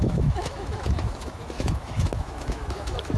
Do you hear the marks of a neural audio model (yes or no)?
yes